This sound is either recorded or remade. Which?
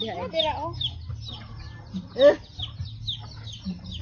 recorded